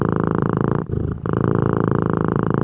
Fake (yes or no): no